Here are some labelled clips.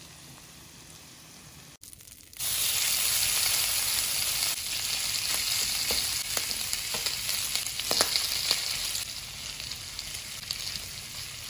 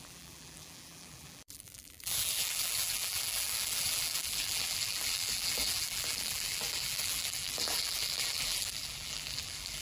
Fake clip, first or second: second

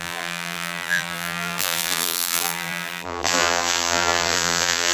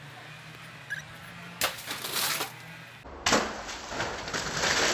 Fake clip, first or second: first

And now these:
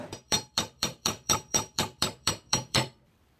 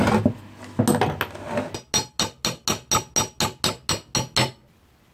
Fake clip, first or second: first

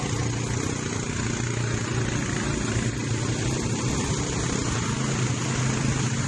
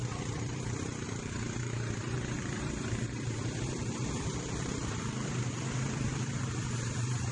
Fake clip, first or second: second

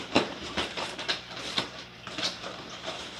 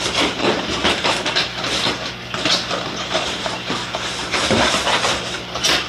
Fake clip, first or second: first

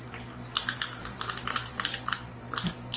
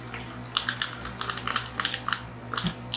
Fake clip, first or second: first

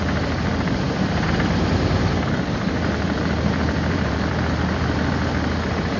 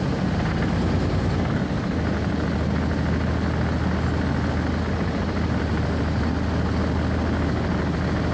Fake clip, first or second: first